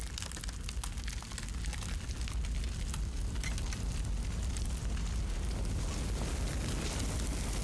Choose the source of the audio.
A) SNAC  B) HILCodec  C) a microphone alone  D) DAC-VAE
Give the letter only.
C